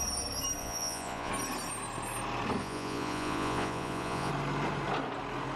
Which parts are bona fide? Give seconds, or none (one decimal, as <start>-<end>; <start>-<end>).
0.0-0.6; 1.3-2.6; 4.3-5.6